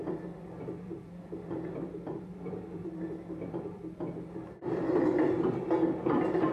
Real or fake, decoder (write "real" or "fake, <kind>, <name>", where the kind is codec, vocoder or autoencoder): fake, vocoder, BigVGAN v2